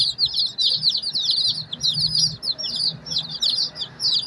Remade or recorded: recorded